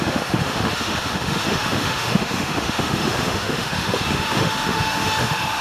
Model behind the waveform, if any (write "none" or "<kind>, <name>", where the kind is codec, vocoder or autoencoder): autoencoder, DAC-VAE